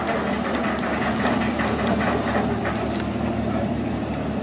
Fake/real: real